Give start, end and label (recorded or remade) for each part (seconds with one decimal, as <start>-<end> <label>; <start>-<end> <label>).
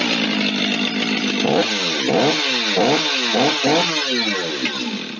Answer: 0.0-5.2 recorded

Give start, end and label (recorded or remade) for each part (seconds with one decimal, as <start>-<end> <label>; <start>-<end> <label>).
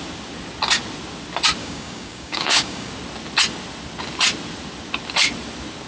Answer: 0.0-1.6 recorded; 1.6-2.9 remade; 2.9-5.9 recorded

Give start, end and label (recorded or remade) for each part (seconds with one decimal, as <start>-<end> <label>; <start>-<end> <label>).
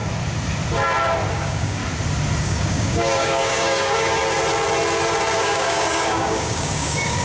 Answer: 0.0-1.3 recorded; 1.3-1.8 remade; 1.8-2.4 recorded; 2.4-4.2 remade; 4.2-5.4 recorded; 5.4-7.2 remade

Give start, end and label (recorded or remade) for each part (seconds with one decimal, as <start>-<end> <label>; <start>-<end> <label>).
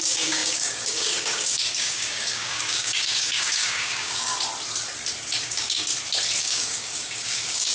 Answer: 0.0-4.3 remade; 4.3-5.4 recorded; 5.4-5.9 remade; 5.9-6.4 recorded; 6.4-7.7 remade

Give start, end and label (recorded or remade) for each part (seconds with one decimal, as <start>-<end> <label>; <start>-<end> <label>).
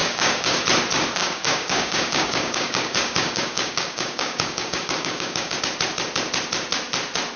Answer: 0.0-0.6 remade; 0.6-1.2 recorded; 1.2-5.6 remade; 5.6-7.4 recorded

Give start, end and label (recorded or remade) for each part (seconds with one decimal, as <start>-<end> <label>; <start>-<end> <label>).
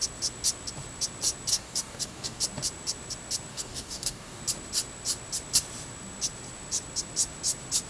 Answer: 0.0-1.5 recorded; 1.5-2.4 remade; 2.4-3.5 recorded; 3.5-4.4 remade; 4.4-7.9 recorded